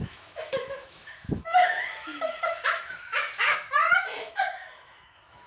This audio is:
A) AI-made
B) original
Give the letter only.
A